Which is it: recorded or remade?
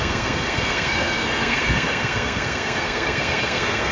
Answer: remade